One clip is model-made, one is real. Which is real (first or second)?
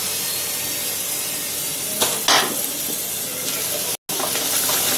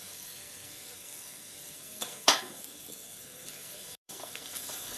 first